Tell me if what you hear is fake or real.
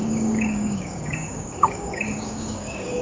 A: fake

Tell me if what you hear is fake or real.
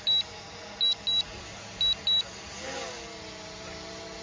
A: real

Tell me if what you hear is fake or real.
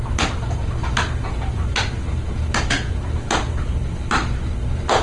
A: real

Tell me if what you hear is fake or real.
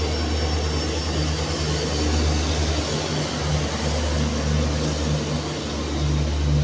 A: real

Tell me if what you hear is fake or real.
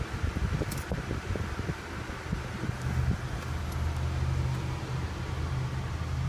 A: real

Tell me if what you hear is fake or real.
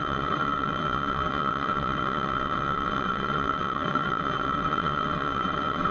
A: fake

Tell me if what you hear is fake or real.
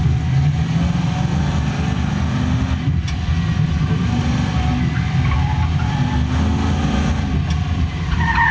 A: real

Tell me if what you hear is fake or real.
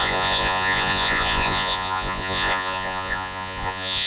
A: fake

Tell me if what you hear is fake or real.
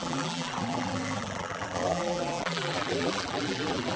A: fake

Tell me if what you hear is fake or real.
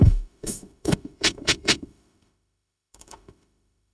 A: fake